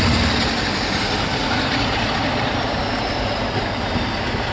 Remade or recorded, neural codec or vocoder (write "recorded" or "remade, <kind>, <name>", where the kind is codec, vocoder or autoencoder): recorded